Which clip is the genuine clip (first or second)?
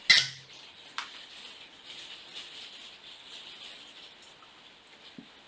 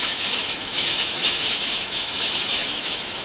first